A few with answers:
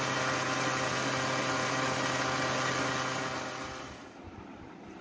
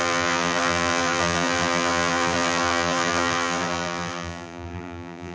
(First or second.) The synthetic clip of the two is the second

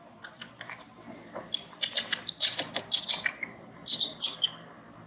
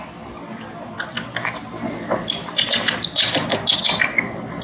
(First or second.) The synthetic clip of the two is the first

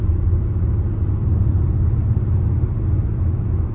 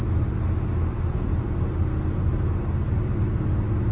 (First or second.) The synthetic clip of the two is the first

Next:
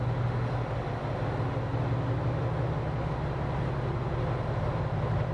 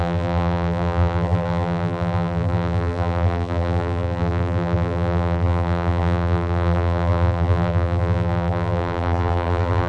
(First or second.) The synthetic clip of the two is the second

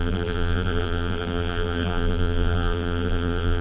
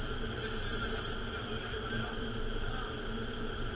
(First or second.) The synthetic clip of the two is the first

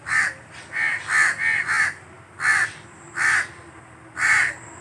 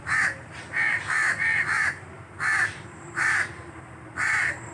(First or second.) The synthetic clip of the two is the second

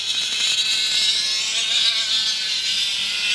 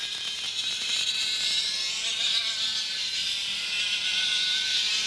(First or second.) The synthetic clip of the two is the second